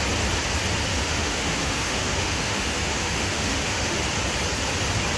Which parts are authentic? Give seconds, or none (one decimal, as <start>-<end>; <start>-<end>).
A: 0.0-0.9; 4.0-5.2